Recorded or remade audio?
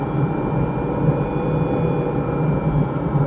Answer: recorded